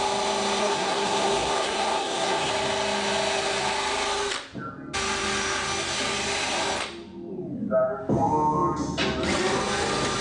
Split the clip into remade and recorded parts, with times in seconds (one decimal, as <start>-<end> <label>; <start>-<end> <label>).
0.0-0.6 recorded; 0.6-2.5 remade; 2.5-10.2 recorded